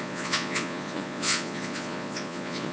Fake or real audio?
fake